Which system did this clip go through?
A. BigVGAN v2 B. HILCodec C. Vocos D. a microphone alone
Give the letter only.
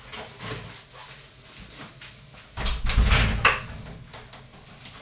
D